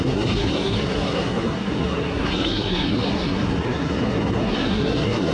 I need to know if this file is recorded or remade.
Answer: remade